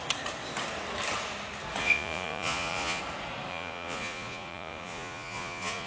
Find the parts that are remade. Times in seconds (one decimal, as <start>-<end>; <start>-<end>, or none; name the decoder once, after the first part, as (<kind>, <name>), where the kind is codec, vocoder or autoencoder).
1.8-3.0 (vocoder, Vocos); 3.5-5.9